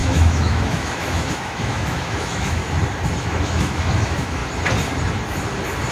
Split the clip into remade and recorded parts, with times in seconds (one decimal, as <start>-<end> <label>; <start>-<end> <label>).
0.0-2.6 remade; 2.6-3.2 recorded; 3.2-4.4 remade; 4.4-5.9 recorded